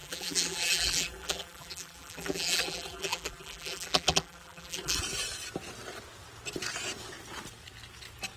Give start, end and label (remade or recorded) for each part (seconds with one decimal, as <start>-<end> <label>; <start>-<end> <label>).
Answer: 0.0-5.0 remade; 5.0-8.4 recorded